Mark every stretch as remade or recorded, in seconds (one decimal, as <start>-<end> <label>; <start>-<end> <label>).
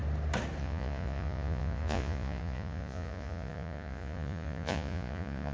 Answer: 0.0-0.6 recorded; 0.6-5.5 remade